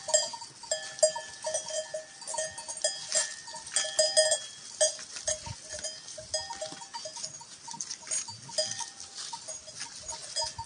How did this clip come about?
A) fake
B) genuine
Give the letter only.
B